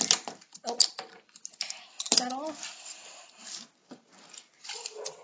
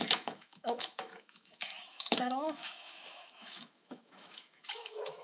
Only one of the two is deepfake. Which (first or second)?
second